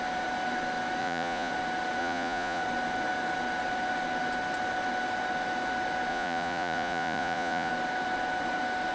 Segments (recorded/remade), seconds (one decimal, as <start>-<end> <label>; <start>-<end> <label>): 0.0-1.0 recorded; 1.0-1.5 remade; 1.5-2.0 recorded; 2.0-2.6 remade; 2.6-6.1 recorded; 6.1-7.7 remade; 7.7-8.9 recorded